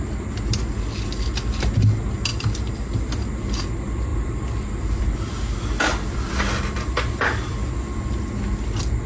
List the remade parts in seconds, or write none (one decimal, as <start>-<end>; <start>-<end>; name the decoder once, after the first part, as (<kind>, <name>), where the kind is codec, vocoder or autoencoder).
2.3-3.0 (vocoder, BigVGAN v2); 4.1-7.7